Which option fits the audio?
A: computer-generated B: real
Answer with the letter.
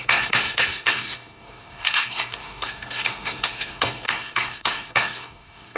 A